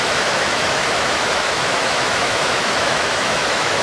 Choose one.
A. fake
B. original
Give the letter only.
A